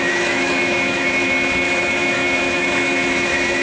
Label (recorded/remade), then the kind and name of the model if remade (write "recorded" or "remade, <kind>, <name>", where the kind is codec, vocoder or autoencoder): remade, autoencoder, DAC-VAE